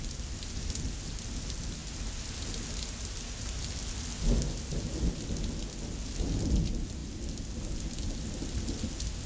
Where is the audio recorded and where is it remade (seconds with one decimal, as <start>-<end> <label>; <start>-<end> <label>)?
0.0-9.3 recorded